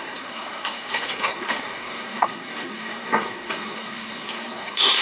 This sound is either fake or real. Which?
fake